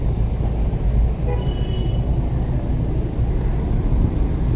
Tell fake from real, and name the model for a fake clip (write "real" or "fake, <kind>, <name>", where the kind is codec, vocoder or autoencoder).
real